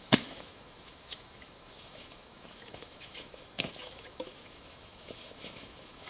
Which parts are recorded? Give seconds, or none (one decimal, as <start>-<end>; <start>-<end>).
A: none

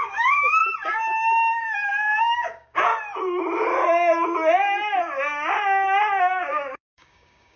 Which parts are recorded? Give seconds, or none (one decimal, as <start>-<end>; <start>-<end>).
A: 0.6-2.2; 2.9-6.2

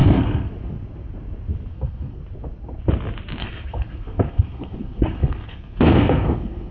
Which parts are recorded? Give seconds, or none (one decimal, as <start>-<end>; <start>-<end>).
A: 0.5-1.7; 2.2-3.4

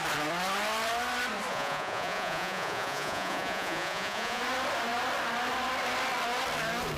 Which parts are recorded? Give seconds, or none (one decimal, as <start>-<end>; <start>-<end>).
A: 0.0-1.5; 4.4-7.0

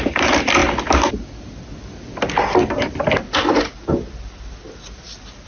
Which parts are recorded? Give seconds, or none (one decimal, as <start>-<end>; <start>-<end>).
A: 0.0-5.5

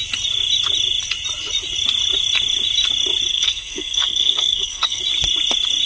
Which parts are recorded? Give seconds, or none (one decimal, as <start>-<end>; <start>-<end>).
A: 0.0-3.3; 5.0-5.9

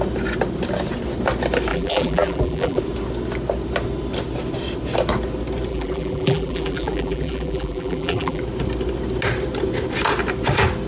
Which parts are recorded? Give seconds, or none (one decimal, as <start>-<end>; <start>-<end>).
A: 0.0-1.7; 2.8-5.7; 8.4-10.9